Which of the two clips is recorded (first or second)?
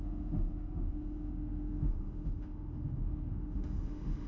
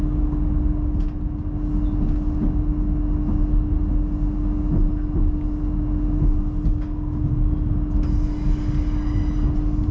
second